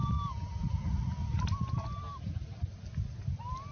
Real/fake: real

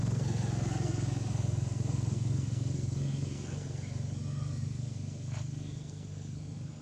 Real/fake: fake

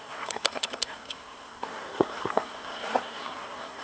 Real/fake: fake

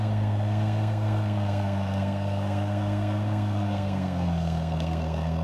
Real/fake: fake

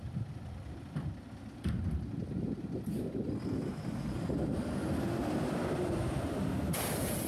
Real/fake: real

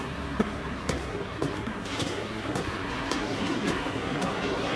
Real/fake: fake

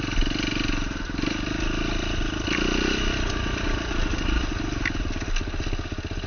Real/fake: real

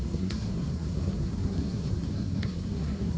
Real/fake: fake